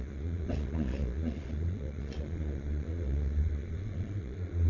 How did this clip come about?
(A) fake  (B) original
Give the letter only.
A